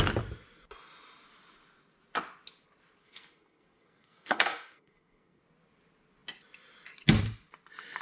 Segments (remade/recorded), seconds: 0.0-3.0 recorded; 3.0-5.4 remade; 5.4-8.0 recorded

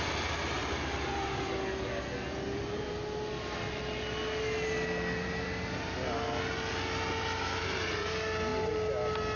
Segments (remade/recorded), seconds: 0.0-0.6 recorded; 0.6-1.5 remade; 1.5-5.2 recorded; 5.2-5.9 remade; 5.9-9.4 recorded

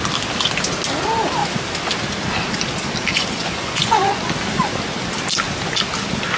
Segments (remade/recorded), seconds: 0.0-3.1 recorded; 3.1-4.2 remade; 4.2-6.4 recorded

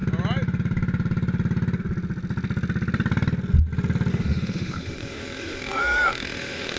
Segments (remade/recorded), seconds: 0.0-4.1 recorded; 4.1-6.8 remade

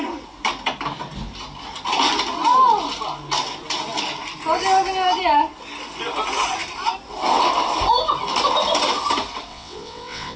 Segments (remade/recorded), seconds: 0.0-9.5 recorded; 9.5-10.4 remade

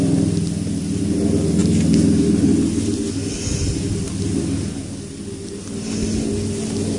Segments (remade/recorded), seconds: 0.0-7.0 recorded